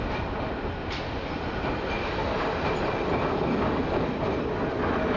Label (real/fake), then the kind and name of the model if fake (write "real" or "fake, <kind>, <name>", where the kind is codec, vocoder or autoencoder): real